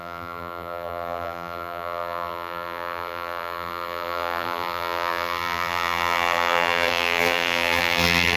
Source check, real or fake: fake